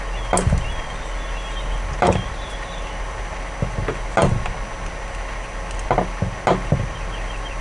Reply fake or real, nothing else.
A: real